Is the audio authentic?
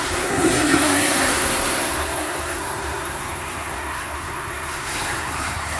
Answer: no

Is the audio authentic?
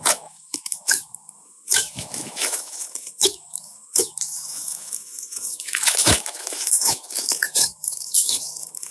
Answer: no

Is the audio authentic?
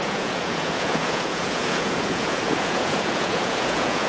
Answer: no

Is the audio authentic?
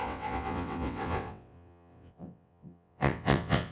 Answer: no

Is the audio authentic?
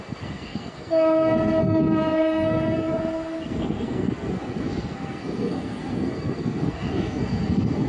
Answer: no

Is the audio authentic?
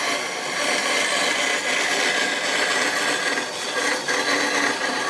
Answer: yes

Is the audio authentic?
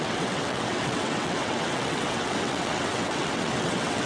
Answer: no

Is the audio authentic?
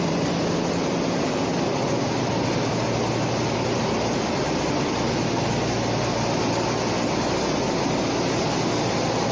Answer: yes